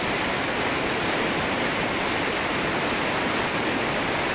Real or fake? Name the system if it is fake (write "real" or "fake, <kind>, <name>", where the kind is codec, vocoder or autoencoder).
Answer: real